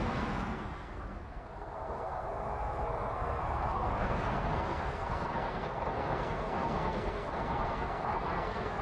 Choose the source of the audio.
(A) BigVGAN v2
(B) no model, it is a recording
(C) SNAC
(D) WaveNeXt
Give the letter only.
C